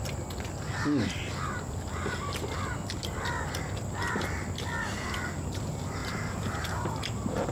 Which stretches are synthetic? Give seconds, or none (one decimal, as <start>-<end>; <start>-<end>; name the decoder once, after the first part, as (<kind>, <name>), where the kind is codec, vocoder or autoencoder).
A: 6.0-7.5 (vocoder, BigVGAN v2)